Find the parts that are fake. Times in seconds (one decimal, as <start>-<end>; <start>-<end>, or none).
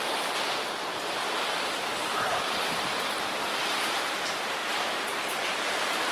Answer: 0.0-2.9; 3.6-4.6; 5.4-6.1